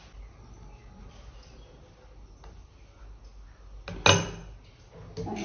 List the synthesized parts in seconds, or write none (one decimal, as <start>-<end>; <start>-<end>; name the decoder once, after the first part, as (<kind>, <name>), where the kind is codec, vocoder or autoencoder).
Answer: none